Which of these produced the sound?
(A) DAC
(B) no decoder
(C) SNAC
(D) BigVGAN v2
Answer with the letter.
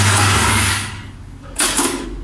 A